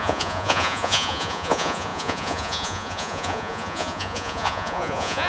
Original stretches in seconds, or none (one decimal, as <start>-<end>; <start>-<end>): none